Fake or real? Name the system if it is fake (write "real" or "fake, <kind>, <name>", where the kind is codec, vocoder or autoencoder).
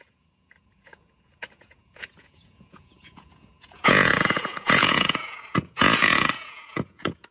fake, vocoder, Vocos